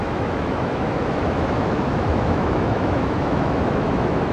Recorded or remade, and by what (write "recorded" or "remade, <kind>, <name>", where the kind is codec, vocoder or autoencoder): remade, autoencoder, DAC-VAE